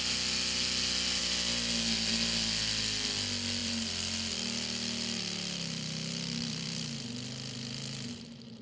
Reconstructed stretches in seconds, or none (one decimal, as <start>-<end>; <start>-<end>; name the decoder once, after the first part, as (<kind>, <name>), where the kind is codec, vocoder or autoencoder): 3.6-8.6 (vocoder, BigVGAN v2)